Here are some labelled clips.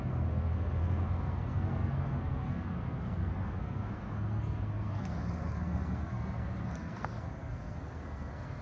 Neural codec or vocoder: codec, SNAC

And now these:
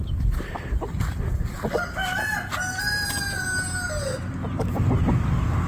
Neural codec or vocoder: none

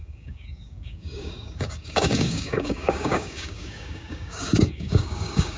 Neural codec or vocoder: codec, DAC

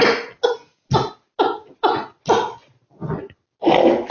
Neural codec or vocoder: none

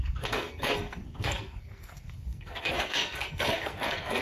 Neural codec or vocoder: codec, SNAC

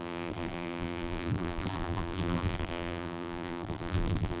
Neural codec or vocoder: vocoder, BigVGAN v2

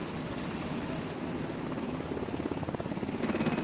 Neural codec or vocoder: none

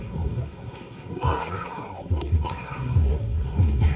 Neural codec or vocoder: codec, SNAC